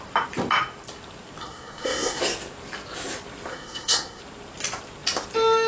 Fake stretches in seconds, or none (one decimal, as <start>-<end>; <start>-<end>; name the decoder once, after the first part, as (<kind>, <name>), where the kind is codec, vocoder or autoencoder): 1.4-2.2 (codec, SNAC); 3.5-4.2